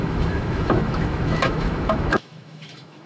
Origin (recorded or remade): remade